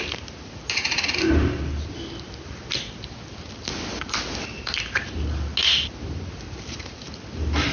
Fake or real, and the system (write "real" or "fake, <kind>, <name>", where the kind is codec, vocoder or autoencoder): real